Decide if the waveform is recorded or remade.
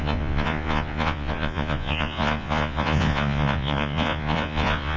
remade